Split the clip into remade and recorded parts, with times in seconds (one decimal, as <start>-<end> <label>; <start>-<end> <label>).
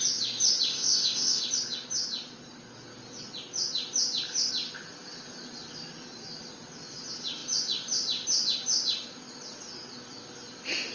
0.0-0.7 recorded; 0.7-1.4 remade; 1.4-10.9 recorded